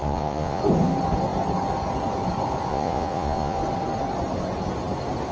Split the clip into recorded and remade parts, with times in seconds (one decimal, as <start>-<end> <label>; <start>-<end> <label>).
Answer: 0.0-0.6 remade; 0.6-2.7 recorded; 2.7-3.6 remade; 3.6-5.3 recorded